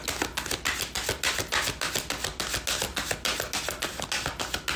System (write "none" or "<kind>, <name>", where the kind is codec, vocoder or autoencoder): none